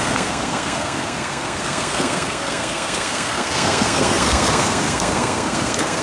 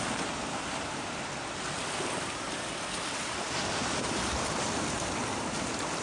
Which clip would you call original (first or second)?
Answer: second